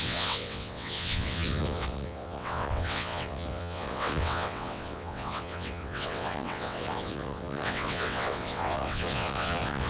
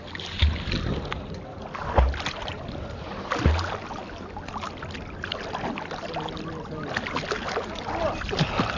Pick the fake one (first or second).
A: first